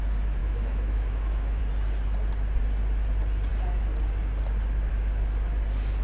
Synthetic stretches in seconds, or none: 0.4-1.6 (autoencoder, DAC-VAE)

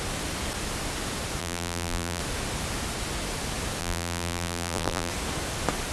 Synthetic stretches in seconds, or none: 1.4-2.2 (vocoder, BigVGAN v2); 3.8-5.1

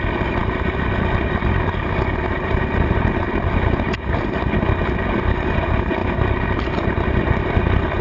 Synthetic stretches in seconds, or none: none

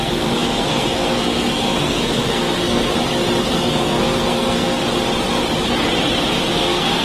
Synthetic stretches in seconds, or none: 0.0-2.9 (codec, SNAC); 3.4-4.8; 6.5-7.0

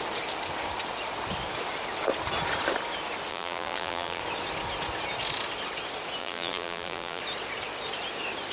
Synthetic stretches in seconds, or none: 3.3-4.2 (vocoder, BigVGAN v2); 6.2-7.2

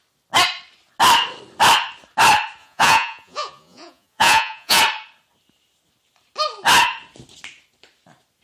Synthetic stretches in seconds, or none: 2.6-4.8 (vocoder, Vocos)

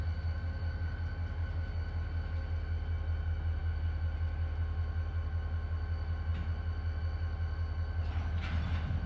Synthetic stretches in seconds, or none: none